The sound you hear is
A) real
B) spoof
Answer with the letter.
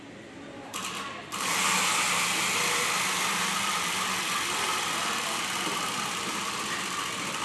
A